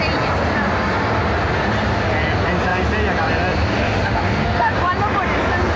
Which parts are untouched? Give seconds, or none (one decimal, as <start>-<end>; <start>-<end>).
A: 0.0-3.7; 4.7-5.8